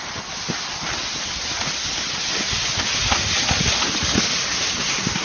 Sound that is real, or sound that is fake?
real